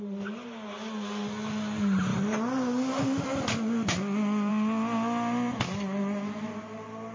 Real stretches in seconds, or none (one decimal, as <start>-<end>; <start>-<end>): 0.0-7.1